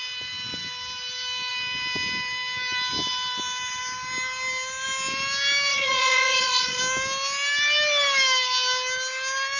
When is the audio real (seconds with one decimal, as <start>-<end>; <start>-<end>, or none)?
0.0-5.7; 6.8-9.6